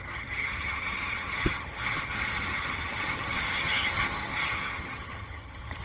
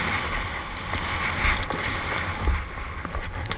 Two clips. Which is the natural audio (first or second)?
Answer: second